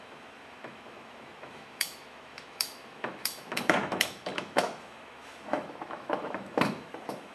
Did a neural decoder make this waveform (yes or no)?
yes